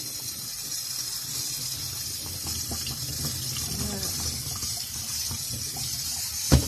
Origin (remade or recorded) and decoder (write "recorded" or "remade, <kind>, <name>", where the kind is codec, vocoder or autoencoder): recorded